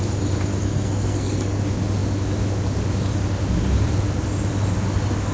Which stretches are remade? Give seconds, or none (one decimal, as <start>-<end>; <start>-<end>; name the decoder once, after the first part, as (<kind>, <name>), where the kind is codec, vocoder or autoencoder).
0.5-1.6 (codec, SNAC)